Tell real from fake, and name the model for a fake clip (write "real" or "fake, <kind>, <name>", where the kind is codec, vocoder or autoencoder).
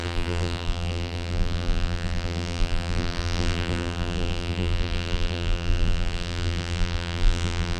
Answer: fake, vocoder, BigVGAN v2